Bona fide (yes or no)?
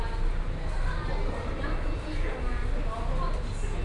yes